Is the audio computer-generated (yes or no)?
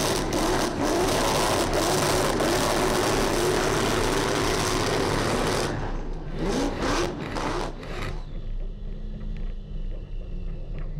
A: no